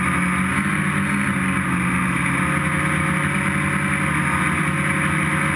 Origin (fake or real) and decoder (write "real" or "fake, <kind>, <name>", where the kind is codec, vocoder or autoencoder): real